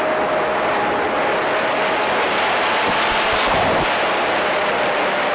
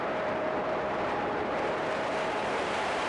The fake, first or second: second